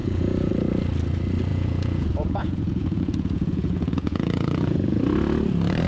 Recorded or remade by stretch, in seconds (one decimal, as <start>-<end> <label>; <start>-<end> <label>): 0.0-0.5 remade; 0.5-1.5 recorded; 1.5-5.0 remade; 5.0-5.9 recorded